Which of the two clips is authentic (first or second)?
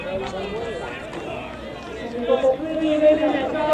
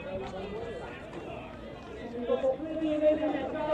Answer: first